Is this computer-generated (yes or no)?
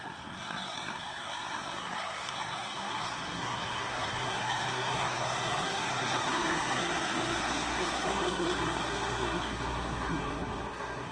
yes